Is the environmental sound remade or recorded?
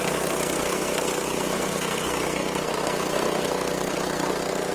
remade